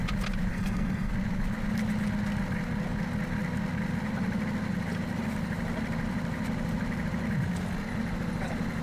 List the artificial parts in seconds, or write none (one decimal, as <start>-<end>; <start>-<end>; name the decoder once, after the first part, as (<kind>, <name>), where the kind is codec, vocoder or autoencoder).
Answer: 0.5-1.1 (codec, SNAC)